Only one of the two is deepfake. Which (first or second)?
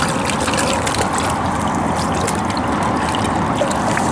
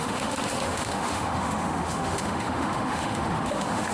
second